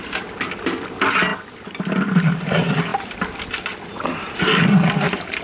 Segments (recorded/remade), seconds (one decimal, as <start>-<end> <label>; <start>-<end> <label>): 0.0-5.4 recorded